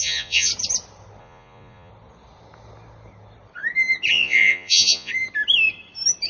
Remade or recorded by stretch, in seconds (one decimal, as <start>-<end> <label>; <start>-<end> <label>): 0.0-0.5 remade; 0.5-1.2 recorded; 1.2-1.9 remade; 1.9-4.1 recorded; 4.1-5.1 remade; 5.1-6.3 recorded